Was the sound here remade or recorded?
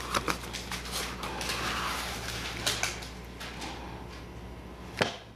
recorded